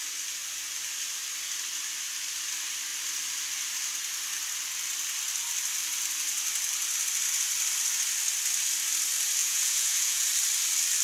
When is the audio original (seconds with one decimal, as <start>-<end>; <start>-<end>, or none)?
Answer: 0.0-9.4; 10.3-11.0